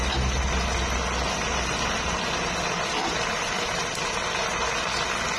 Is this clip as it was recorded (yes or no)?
yes